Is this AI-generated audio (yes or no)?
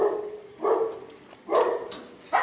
no